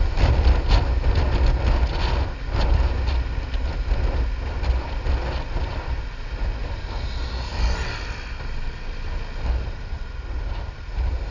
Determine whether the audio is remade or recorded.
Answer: recorded